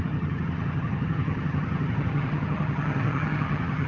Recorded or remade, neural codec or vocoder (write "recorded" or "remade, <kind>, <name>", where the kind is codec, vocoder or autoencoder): remade, vocoder, HiFi-GAN